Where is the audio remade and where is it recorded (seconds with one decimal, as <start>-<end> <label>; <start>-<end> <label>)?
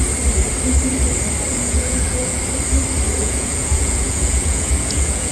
0.0-1.5 recorded; 1.5-2.4 remade; 2.4-3.2 recorded; 3.2-5.3 remade